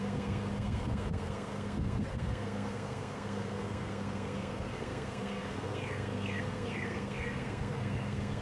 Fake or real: fake